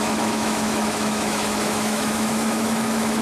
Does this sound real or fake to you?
fake